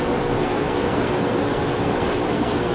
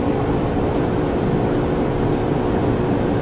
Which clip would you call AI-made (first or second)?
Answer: first